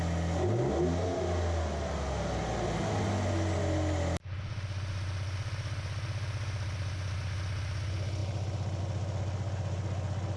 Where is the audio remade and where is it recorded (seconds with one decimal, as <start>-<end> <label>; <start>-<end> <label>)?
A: 0.0-10.4 recorded